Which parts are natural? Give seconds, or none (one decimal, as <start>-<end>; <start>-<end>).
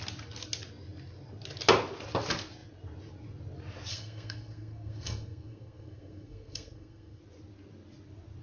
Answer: 0.0-3.9; 7.2-8.4